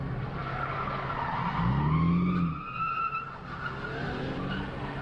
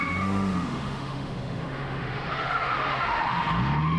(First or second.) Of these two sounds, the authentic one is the first